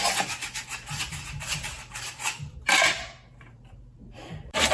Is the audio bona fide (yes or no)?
no